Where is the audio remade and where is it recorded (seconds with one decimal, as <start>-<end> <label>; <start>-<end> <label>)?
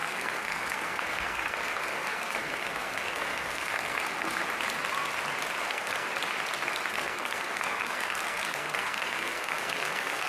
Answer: 0.0-4.4 remade; 4.4-5.6 recorded; 5.6-6.1 remade; 6.1-6.9 recorded; 6.9-10.3 remade